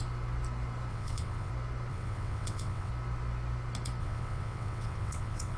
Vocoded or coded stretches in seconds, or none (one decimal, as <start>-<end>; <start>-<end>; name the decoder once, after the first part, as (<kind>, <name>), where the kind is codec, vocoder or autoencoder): 0.9-1.5 (vocoder, WaveNeXt); 1.9-2.9; 4.0-5.6